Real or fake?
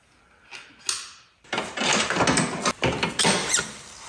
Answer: real